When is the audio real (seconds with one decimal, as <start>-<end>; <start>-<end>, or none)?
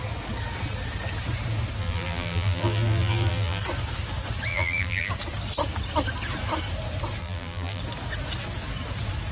0.0-1.8; 3.6-4.5; 5.1-7.2; 7.8-9.3